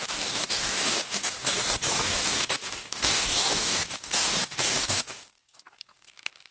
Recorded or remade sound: remade